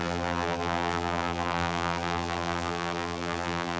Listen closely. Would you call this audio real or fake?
fake